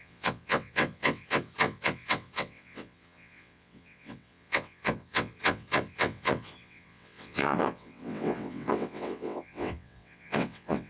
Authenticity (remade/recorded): remade